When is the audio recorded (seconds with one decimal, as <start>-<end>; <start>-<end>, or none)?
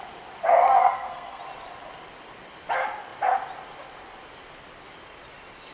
0.0-0.8; 1.4-5.7